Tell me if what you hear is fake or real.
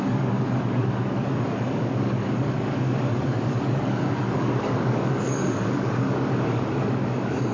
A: fake